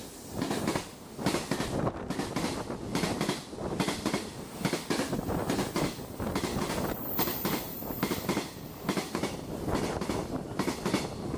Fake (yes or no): no